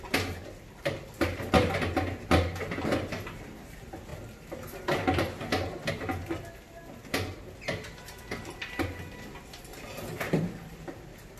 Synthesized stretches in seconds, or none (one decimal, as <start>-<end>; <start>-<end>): none